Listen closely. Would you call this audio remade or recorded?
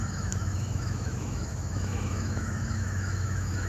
remade